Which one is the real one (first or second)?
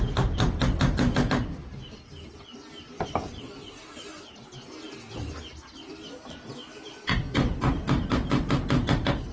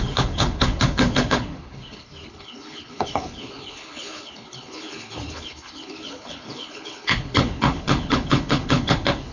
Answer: first